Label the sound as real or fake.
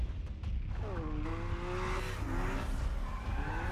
real